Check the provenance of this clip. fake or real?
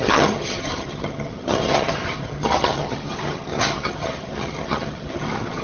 fake